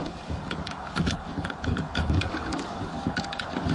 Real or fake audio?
fake